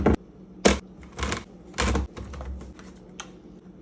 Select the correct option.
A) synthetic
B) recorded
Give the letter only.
B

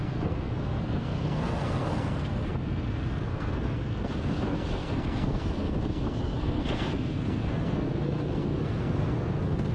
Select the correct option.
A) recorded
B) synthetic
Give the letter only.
B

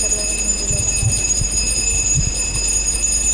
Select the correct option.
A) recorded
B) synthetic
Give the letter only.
A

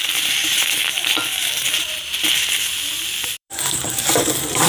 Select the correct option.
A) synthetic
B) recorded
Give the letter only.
A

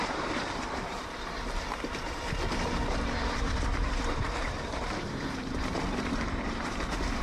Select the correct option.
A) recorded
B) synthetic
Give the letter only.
B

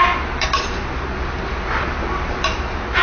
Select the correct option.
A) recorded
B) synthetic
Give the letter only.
A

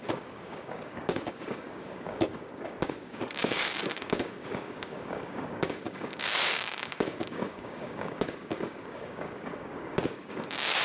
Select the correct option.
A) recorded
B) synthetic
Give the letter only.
B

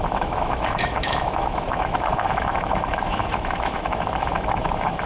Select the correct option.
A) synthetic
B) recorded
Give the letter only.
A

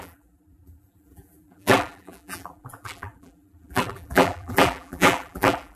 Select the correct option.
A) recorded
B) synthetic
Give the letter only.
B